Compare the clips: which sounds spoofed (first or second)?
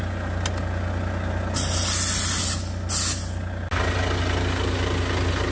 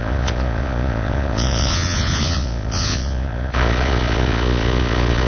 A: second